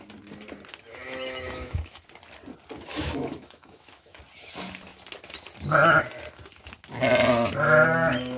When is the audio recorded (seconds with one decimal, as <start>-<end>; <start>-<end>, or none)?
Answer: 0.0-1.0; 2.0-2.9; 4.2-8.4